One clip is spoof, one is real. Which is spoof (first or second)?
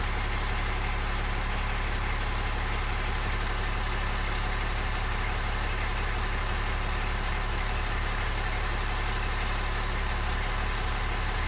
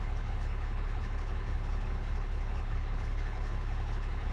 second